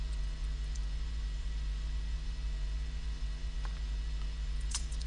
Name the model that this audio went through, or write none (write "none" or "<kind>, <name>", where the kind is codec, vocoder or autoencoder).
vocoder, Vocos